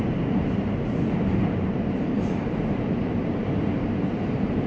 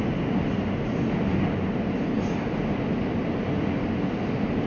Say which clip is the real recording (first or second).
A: second